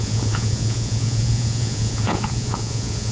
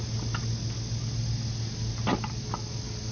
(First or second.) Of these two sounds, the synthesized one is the first